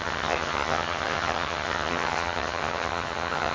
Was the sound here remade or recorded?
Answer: remade